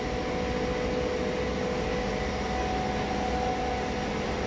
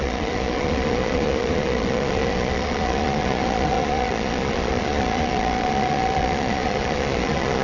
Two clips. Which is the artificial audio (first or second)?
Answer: second